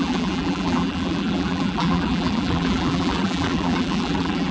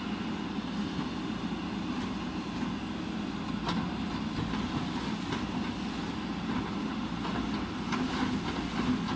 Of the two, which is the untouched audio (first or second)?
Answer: second